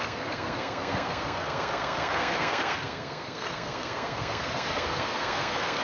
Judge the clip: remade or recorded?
remade